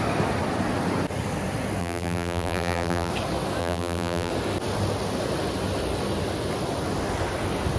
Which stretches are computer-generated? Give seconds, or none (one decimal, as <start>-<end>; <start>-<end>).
1.8-3.1; 3.6-4.3